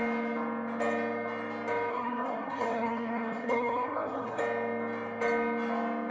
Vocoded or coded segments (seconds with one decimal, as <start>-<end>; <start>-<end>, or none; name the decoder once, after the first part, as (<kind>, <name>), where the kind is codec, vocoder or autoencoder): 1.9-4.4 (codec, SNAC)